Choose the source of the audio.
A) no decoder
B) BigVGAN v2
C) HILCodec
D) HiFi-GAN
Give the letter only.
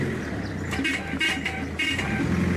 A